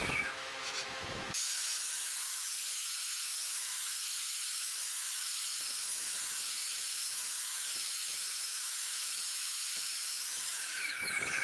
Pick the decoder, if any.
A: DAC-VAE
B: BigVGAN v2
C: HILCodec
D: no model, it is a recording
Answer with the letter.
A